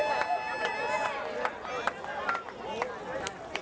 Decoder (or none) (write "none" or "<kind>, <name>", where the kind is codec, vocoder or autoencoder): none